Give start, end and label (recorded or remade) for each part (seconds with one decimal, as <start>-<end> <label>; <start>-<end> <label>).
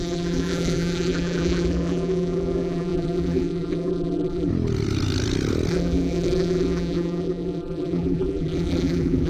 0.0-4.5 remade; 4.5-5.7 recorded; 5.7-9.3 remade